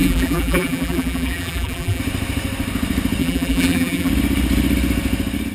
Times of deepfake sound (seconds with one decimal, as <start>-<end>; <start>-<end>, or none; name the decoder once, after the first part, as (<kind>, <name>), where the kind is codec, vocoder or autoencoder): 0.0-2.0 (vocoder, BigVGAN v2); 3.2-4.1